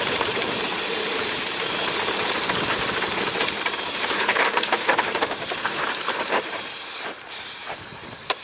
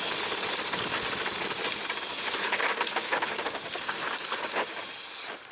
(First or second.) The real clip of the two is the second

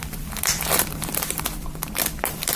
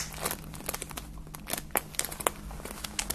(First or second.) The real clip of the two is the second